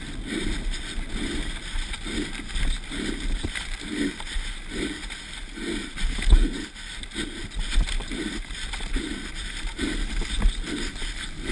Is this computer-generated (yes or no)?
no